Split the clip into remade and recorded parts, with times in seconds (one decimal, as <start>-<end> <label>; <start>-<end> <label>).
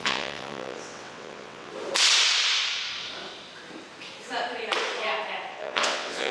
0.0-1.7 remade; 1.7-5.5 recorded; 5.5-6.3 remade